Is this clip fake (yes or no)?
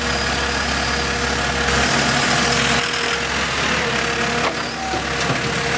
no